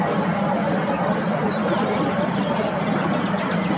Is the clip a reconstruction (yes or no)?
no